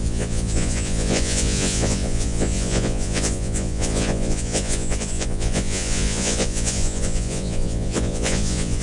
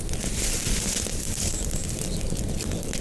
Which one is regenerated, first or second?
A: first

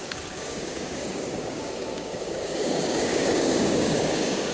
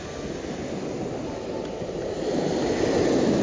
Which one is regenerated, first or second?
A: first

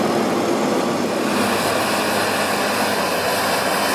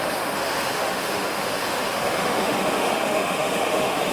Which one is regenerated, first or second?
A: second